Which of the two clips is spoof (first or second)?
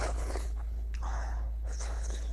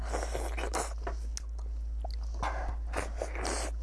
first